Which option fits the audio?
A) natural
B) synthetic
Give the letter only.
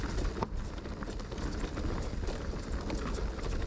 A